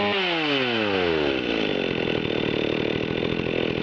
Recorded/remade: recorded